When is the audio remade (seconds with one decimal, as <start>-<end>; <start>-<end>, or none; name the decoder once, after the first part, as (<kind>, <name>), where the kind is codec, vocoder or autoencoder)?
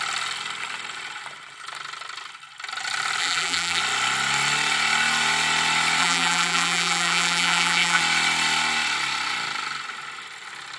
3.2-3.8 (vocoder, BigVGAN v2); 6.0-8.0